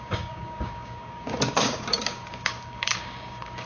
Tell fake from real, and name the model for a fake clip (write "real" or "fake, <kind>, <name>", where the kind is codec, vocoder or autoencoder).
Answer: fake, codec, DAC